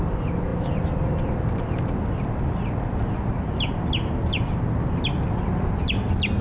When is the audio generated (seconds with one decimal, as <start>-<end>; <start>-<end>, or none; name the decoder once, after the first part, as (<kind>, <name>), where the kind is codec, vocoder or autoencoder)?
none